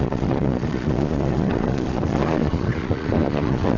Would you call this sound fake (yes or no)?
yes